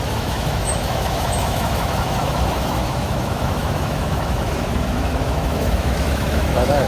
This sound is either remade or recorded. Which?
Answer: remade